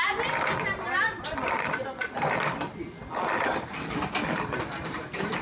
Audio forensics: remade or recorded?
recorded